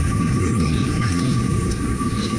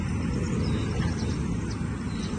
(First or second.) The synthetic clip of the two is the first